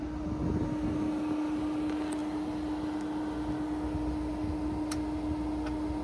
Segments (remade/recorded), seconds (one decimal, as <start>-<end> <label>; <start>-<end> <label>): 0.0-6.0 recorded

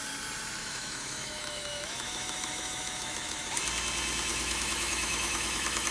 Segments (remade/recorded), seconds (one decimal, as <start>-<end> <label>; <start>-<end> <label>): 0.0-0.6 recorded; 0.6-3.5 remade; 3.5-4.3 recorded; 4.3-5.9 remade

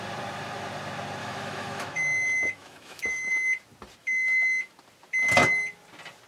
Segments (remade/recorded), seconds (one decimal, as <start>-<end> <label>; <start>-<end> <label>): 0.0-1.2 recorded; 1.2-3.3 remade; 3.3-4.0 recorded; 4.0-4.7 remade; 4.7-6.3 recorded

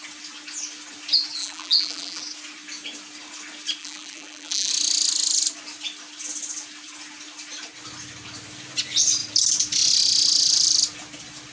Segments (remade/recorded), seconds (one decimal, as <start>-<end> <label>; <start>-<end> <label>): 0.0-1.4 recorded; 1.4-2.2 remade; 2.2-3.8 recorded; 3.8-4.7 remade; 4.7-11.5 recorded

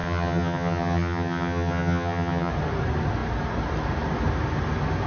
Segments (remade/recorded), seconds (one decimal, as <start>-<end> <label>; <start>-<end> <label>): 0.0-2.5 remade; 2.5-5.1 recorded